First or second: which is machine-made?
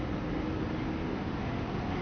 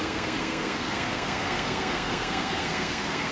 second